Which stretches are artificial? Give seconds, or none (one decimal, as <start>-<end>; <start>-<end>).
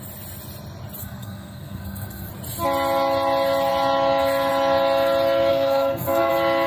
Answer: 1.0-2.3; 5.5-6.3